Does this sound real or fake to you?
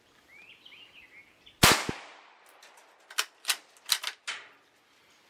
real